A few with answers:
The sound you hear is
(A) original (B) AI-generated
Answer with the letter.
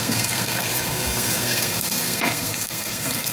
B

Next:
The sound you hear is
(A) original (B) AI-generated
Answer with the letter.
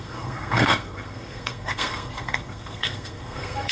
B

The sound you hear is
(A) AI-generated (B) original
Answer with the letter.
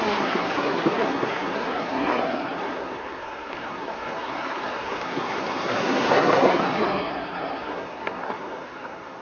A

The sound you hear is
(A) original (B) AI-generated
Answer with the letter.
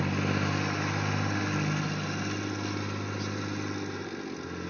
A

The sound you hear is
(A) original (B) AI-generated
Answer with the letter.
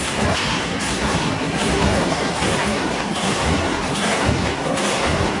B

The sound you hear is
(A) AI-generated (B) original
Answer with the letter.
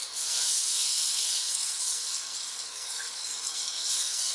A